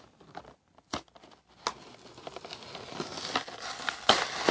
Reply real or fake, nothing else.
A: real